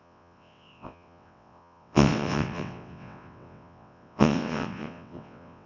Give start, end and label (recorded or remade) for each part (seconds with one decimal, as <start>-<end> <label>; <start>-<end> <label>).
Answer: 0.0-5.7 remade